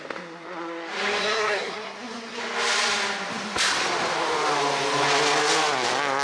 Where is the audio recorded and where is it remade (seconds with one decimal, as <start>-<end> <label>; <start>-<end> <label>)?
0.0-1.2 recorded; 1.2-2.4 remade; 2.4-6.2 recorded